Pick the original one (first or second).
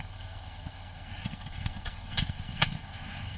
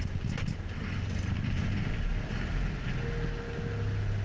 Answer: second